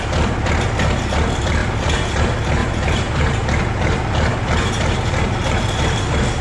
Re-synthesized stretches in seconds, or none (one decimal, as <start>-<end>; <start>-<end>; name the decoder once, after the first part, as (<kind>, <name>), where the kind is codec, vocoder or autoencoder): 2.6-5.9 (vocoder, BigVGAN v2)